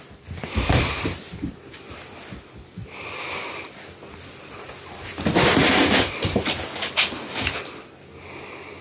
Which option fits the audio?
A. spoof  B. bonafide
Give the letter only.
B